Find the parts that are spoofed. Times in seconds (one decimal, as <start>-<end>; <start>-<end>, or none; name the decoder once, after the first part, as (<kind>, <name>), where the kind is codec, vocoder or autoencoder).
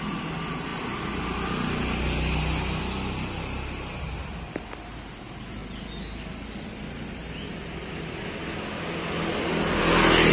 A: none